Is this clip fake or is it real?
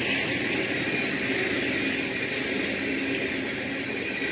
real